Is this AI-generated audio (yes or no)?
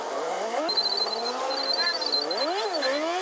no